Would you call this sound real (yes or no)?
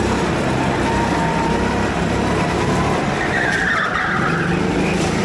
yes